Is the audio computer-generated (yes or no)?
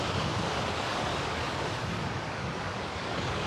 yes